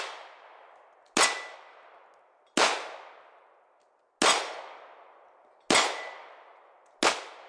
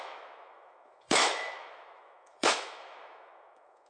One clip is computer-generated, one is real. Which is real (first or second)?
first